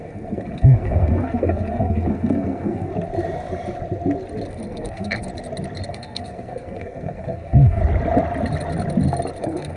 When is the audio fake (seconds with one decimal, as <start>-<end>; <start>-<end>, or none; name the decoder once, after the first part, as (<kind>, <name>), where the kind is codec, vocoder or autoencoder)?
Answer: 0.0-2.9 (codec, SNAC); 4.5-5.3; 5.9-7.8; 9.4-9.8

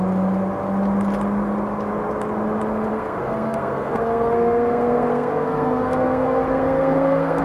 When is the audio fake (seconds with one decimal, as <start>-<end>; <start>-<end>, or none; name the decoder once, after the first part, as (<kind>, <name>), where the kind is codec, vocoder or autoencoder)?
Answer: 2.9-7.4 (codec, SNAC)

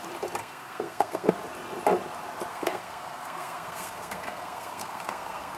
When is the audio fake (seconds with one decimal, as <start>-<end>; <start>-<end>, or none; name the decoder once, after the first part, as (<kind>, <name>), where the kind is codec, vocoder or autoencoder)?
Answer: 0.4-1.3 (codec, SNAC); 2.5-5.6

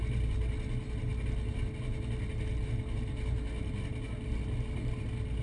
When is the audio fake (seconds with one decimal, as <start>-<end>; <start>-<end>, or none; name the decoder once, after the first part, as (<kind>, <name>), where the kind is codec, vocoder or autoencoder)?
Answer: none